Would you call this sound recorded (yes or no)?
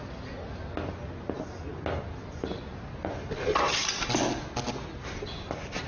yes